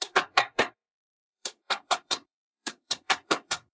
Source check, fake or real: fake